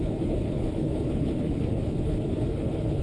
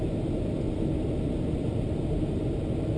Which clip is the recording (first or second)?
second